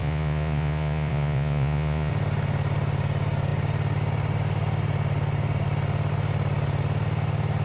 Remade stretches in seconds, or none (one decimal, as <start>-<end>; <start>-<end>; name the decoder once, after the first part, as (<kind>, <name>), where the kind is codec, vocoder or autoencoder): 0.0-2.1 (vocoder, Vocos)